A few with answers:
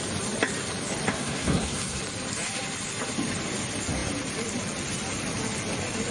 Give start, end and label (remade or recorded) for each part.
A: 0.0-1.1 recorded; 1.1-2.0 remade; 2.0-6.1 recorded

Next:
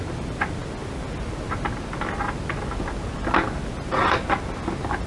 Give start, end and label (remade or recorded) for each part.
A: 0.0-5.1 recorded

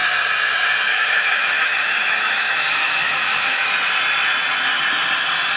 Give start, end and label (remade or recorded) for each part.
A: 0.0-0.9 recorded; 0.9-3.7 remade; 3.7-5.6 recorded

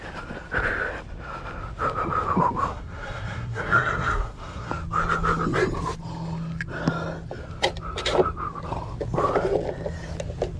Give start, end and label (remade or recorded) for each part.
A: 0.0-2.7 recorded; 2.7-4.7 remade; 4.7-10.6 recorded

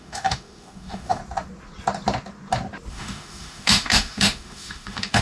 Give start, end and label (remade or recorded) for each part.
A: 0.0-1.2 remade; 1.2-2.9 recorded; 2.9-5.2 remade

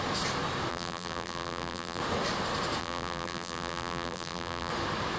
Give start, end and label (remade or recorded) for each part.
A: 0.0-0.7 recorded; 0.7-2.0 remade; 2.0-2.8 recorded; 2.8-4.7 remade; 4.7-5.2 recorded

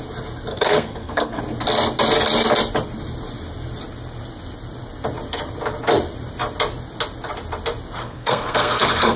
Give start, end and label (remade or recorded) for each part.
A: 0.0-0.5 recorded; 0.5-1.4 remade; 1.4-8.0 recorded; 8.0-9.2 remade

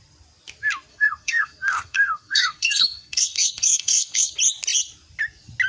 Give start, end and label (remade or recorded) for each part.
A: 0.0-0.9 recorded; 0.9-4.3 remade; 4.3-5.7 recorded